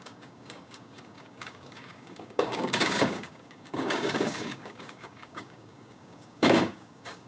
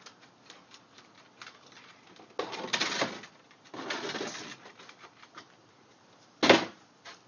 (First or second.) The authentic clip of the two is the second